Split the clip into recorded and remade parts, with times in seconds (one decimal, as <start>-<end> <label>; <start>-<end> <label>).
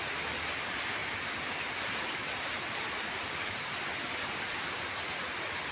0.0-5.7 recorded